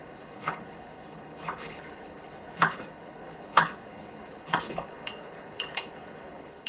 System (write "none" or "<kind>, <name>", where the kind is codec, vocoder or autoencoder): codec, HILCodec